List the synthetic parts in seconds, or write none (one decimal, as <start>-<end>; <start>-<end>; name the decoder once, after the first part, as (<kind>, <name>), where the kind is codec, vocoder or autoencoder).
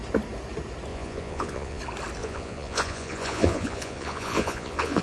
0.9-1.8 (vocoder, Vocos); 2.2-5.0